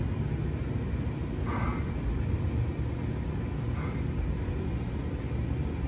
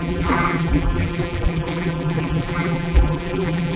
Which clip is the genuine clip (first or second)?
first